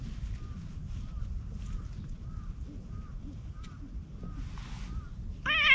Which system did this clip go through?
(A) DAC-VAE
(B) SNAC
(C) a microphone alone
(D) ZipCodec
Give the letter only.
C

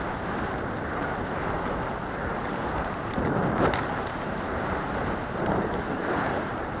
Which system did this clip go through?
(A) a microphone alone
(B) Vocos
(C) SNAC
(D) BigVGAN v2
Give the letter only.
D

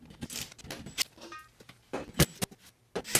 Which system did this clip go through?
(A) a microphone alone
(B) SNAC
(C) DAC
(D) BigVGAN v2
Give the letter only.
A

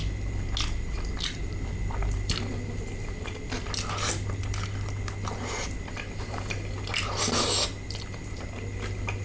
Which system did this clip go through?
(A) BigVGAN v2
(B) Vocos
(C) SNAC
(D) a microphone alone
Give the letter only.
D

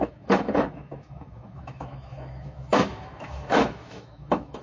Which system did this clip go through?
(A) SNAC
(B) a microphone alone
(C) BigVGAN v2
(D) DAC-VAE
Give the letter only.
D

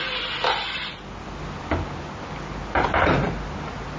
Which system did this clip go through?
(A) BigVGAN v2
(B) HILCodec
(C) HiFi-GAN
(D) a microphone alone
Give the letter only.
D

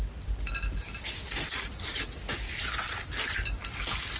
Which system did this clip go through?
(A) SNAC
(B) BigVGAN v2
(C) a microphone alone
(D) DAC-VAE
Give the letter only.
C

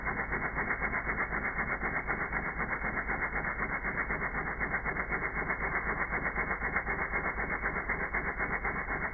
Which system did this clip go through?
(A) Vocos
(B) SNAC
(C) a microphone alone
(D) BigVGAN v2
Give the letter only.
C